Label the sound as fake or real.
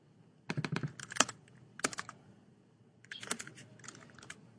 real